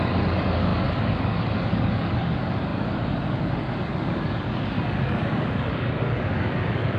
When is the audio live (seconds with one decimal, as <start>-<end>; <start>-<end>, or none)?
none